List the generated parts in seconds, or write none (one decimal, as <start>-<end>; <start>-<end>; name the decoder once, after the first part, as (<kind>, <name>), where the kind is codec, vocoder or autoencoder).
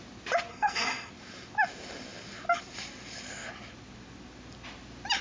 0.5-1.1 (codec, SNAC)